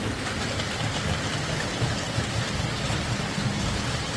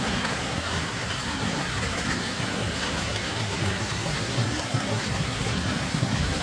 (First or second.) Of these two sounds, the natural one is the first